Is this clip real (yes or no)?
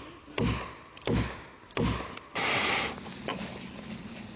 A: yes